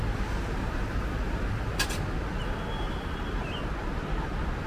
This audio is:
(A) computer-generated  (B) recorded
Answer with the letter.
B